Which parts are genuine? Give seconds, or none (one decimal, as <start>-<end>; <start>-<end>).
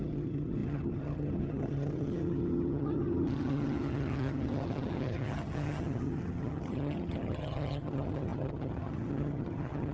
none